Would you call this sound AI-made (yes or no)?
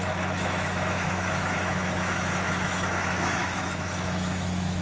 yes